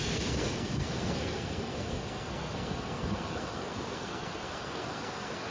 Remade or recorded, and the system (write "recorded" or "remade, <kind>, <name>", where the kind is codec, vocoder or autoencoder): remade, codec, SNAC